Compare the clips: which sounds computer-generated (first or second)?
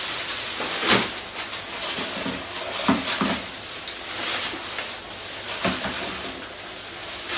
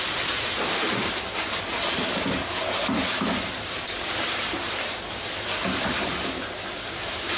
second